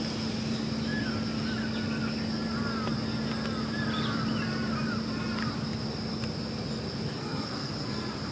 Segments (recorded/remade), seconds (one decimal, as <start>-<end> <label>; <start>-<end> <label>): 0.0-7.1 recorded; 7.1-7.7 remade; 7.7-8.3 recorded